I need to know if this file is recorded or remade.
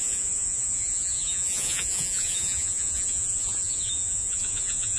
remade